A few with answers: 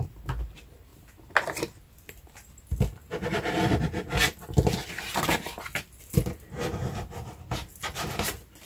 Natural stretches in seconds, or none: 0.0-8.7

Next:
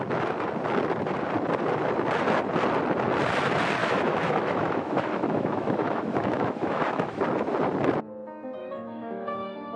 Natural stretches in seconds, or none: 0.0-3.8; 7.2-8.6

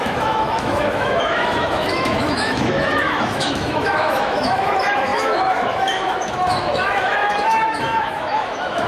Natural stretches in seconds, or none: none

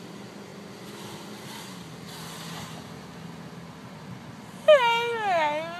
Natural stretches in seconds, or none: 0.0-5.8

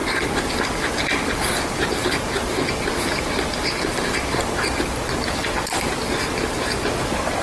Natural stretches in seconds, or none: 0.0-7.4